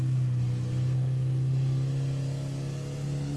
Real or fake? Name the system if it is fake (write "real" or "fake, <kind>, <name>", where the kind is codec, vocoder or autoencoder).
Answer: real